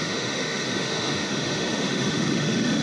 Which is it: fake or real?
fake